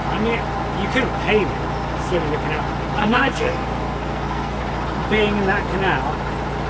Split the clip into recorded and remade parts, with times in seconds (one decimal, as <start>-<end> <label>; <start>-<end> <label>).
0.0-3.0 recorded; 3.0-4.6 remade; 4.6-6.7 recorded